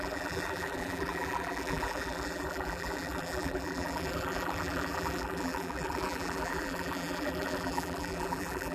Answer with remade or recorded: remade